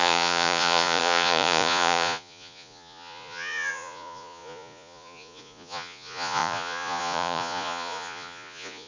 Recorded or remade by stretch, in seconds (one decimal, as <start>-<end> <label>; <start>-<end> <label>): 0.0-8.9 remade